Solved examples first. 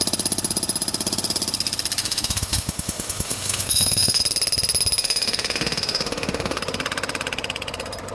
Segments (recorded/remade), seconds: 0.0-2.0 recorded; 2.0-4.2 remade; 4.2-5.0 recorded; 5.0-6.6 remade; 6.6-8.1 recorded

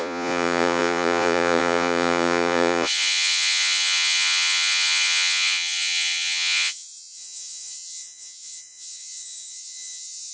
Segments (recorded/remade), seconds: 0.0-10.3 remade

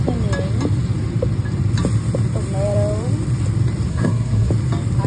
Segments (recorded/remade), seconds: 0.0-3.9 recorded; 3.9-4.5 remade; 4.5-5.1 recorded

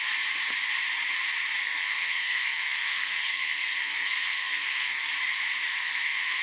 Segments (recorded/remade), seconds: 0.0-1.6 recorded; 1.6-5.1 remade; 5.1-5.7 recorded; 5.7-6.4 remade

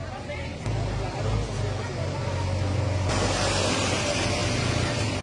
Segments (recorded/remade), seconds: 0.0-5.2 recorded